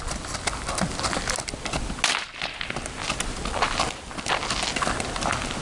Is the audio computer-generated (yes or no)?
no